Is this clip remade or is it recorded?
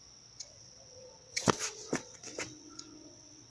remade